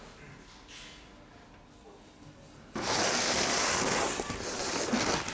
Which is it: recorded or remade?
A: recorded